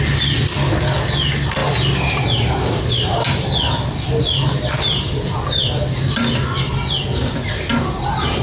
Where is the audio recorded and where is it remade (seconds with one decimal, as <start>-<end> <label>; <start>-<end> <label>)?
0.0-8.4 recorded